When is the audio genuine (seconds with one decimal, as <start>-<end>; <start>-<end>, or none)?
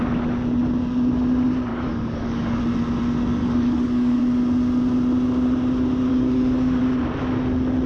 0.0-1.7; 2.6-3.4; 4.2-6.1; 6.8-7.9